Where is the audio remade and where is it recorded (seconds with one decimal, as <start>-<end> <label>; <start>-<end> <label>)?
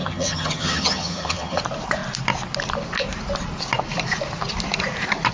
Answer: 0.0-1.6 remade; 1.6-5.3 recorded